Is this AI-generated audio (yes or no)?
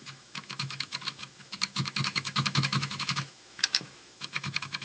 yes